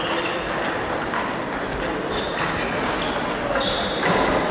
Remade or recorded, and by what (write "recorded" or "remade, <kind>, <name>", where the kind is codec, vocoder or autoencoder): recorded